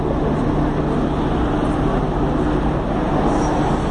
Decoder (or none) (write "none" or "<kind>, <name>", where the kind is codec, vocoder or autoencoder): none